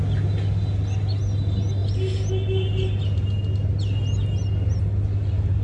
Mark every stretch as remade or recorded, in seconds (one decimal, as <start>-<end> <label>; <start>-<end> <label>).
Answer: 0.0-5.6 recorded